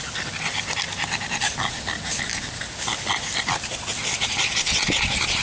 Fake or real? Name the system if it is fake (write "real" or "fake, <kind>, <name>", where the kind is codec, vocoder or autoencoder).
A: real